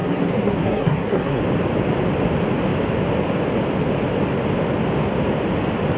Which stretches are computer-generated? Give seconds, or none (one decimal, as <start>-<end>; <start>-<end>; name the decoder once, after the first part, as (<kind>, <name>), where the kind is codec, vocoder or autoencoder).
0.0-1.4 (codec, SNAC)